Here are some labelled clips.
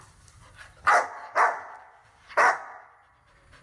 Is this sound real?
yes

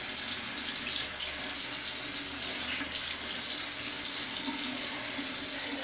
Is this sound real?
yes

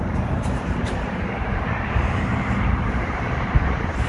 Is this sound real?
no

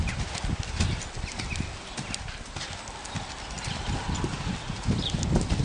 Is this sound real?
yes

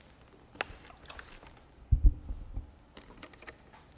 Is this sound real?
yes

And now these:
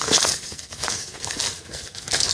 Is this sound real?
no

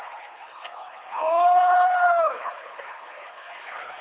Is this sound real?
no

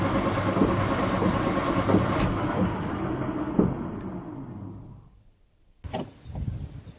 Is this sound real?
yes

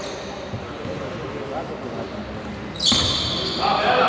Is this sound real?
yes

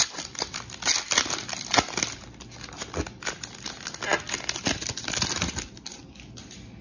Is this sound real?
yes